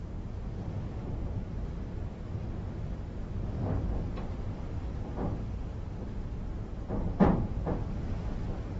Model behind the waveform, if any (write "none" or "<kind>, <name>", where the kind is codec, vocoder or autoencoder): none